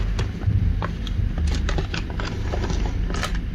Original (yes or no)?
yes